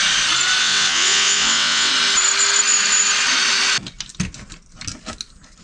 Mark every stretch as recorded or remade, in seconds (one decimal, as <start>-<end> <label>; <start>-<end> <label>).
0.0-0.6 recorded; 0.6-1.9 remade; 1.9-5.6 recorded